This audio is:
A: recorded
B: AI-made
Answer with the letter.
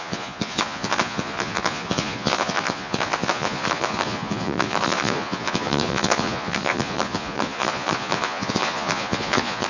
B